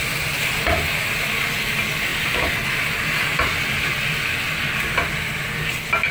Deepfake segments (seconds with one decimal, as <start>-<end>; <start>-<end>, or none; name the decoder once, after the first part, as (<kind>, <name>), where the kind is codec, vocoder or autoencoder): none